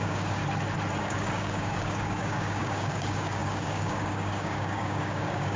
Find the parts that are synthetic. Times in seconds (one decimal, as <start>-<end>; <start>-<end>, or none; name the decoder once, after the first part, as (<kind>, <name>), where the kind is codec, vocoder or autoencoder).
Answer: 0.0-0.4 (codec, DAC); 1.0-5.6